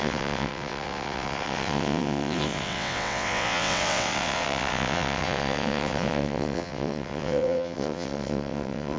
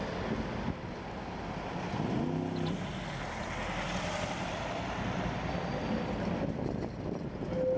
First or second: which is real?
second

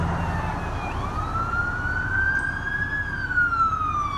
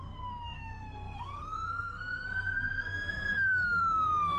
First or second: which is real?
first